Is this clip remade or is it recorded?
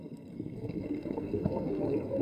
remade